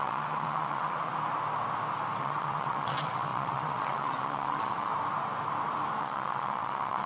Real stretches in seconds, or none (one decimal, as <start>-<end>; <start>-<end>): 1.1-2.2; 4.9-6.0